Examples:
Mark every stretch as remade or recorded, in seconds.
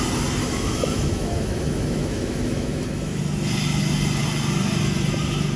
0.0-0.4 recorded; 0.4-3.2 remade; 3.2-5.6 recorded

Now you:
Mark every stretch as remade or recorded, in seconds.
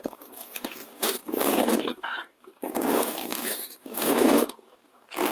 0.0-5.3 remade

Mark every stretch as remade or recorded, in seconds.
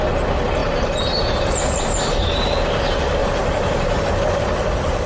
0.0-0.6 recorded; 0.6-2.5 remade; 2.5-3.2 recorded; 3.2-4.1 remade; 4.1-5.1 recorded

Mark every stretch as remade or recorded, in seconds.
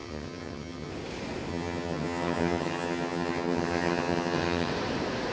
0.0-0.9 remade; 0.9-1.5 recorded; 1.5-4.7 remade; 4.7-5.3 recorded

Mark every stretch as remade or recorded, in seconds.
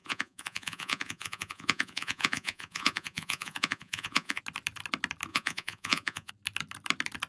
0.0-4.4 remade; 4.4-5.3 recorded; 5.3-6.3 remade; 6.3-7.3 recorded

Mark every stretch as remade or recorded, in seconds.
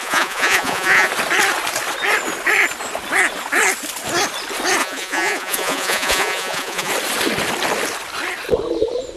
0.0-1.1 remade; 1.1-4.8 recorded; 4.8-6.9 remade; 6.9-9.2 recorded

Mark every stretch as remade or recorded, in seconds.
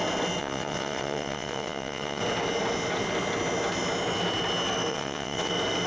0.0-0.4 recorded; 0.4-2.2 remade; 2.2-4.9 recorded; 4.9-5.5 remade; 5.5-5.9 recorded